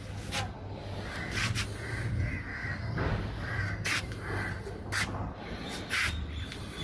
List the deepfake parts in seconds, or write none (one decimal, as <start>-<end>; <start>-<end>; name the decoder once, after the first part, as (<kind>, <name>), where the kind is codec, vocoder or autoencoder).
0.8-1.6 (codec, DAC); 2.5-4.0